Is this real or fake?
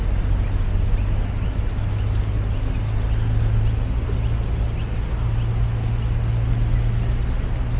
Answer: real